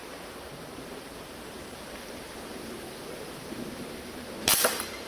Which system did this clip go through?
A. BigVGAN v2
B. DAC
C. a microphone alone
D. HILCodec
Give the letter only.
A